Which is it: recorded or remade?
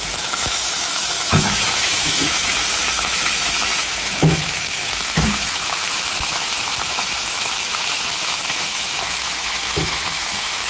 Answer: remade